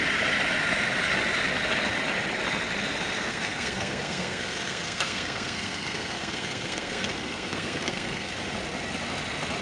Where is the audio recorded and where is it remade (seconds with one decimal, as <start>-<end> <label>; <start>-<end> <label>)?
0.0-3.3 recorded; 3.3-8.3 remade; 8.3-9.6 recorded